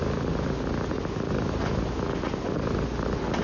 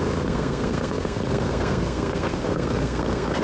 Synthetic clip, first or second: second